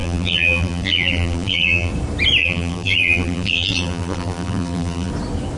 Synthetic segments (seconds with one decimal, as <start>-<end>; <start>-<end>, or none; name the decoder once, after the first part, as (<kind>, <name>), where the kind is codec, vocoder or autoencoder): 0.0-1.9 (vocoder, BigVGAN v2); 2.4-5.1